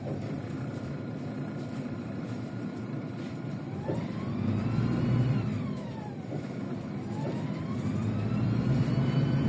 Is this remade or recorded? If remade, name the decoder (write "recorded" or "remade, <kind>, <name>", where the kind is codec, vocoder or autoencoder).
remade, vocoder, BigVGAN v2